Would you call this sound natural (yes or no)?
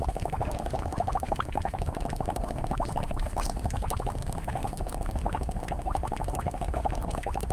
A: no